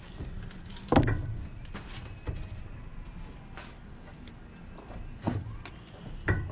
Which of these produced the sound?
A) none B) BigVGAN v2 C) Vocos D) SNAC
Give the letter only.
A